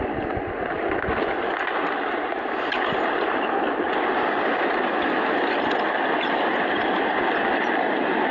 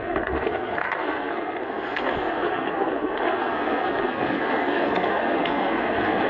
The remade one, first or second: second